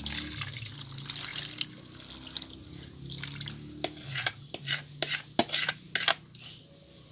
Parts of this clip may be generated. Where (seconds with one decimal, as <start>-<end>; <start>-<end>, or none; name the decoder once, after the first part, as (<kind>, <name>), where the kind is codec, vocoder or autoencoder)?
none